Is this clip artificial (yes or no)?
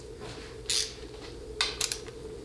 no